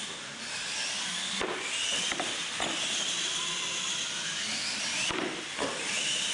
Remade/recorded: recorded